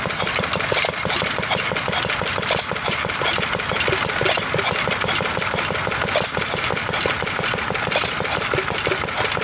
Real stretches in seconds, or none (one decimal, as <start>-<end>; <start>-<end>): 0.0-9.4